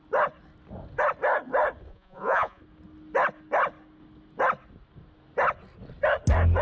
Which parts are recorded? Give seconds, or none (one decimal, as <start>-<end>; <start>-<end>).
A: 0.0-1.9; 2.6-6.6